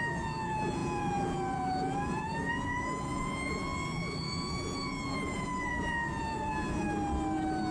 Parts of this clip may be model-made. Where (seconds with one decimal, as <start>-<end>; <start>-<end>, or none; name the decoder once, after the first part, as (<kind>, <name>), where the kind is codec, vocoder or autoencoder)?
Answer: 0.0-6.8 (vocoder, Vocos)